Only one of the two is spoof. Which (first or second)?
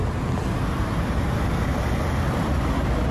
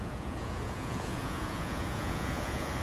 second